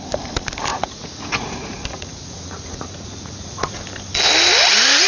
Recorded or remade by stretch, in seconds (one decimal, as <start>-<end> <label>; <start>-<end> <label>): 0.0-0.7 recorded; 0.7-3.8 remade; 3.8-5.1 recorded